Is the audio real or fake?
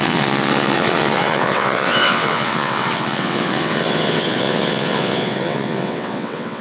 fake